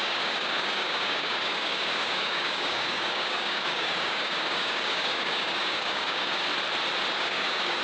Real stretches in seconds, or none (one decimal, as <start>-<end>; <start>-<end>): 6.5-7.1